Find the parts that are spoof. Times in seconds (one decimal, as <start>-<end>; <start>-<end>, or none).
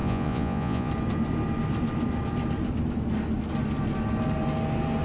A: 0.0-0.9